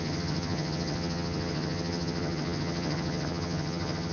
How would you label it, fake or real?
fake